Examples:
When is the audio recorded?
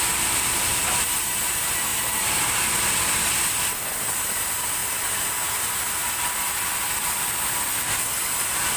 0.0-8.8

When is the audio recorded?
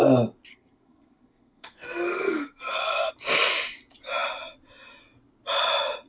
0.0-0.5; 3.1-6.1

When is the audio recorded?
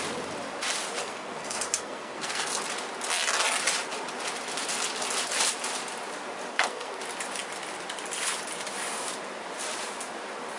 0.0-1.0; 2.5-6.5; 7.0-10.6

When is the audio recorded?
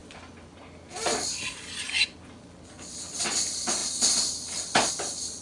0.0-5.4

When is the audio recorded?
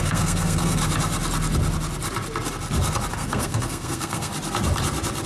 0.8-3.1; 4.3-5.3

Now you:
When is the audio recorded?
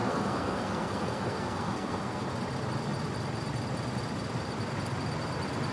2.2-5.7